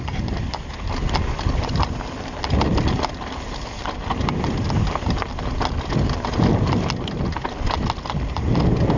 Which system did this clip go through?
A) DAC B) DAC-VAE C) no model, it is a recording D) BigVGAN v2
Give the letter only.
C